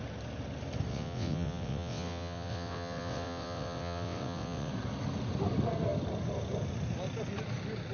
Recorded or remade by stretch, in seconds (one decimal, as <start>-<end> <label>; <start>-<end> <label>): 0.0-0.9 recorded; 0.9-4.7 remade; 4.7-7.9 recorded